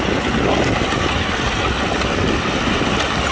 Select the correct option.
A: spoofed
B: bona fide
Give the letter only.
B